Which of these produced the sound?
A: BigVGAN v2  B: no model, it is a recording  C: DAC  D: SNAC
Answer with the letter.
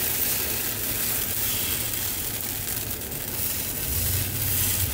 B